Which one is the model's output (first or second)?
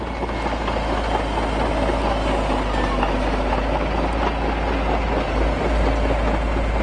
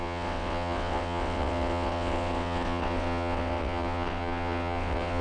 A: second